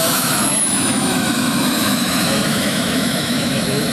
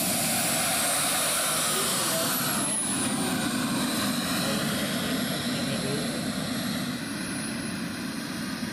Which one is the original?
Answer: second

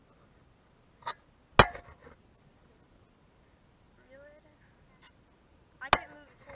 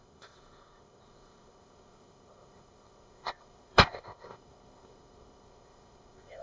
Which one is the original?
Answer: first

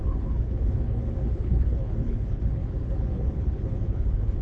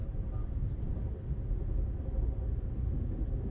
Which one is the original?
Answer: second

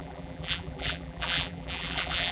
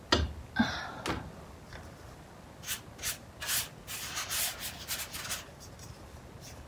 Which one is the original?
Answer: second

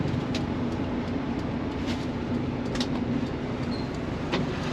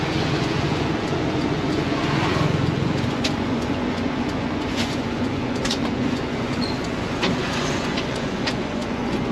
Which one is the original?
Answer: first